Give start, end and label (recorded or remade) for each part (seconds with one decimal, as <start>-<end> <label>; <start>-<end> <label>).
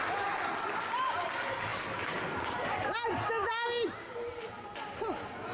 0.0-5.5 recorded